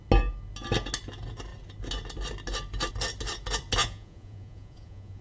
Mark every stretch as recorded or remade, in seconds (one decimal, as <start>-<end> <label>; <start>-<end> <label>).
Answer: 0.0-3.8 recorded; 3.8-5.2 remade